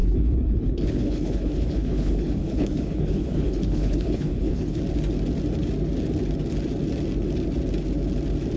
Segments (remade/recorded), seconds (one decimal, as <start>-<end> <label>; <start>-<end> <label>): 0.0-4.8 remade; 4.8-8.6 recorded